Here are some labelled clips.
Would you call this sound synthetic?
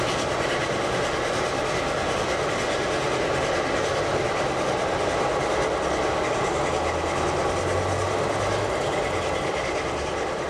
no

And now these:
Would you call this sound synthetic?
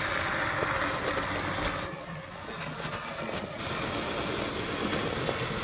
no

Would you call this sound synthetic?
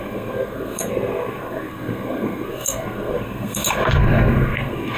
yes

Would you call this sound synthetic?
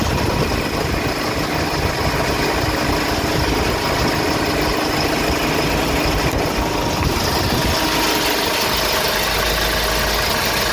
no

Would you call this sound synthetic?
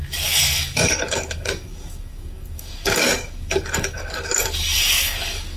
yes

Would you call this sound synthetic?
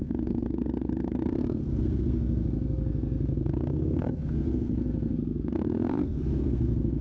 yes